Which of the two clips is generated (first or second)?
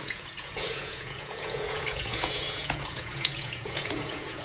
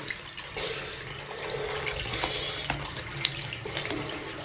first